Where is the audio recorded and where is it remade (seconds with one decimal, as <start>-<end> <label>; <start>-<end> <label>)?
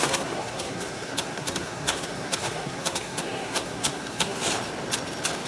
0.0-4.4 remade; 4.4-5.5 recorded